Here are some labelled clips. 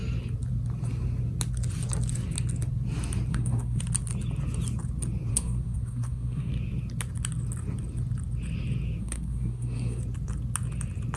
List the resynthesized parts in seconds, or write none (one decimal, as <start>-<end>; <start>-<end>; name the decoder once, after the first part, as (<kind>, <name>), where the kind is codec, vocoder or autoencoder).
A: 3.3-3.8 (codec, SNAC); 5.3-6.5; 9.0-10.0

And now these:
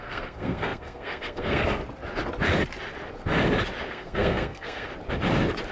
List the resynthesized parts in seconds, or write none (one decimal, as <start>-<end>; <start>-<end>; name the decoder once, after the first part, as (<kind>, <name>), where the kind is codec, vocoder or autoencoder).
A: 0.0-1.8 (codec, SNAC); 3.9-4.9

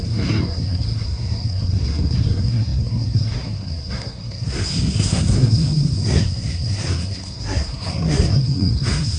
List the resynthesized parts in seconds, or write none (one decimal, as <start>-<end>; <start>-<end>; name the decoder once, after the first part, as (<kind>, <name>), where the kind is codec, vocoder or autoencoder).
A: 0.0-9.2 (codec, SNAC)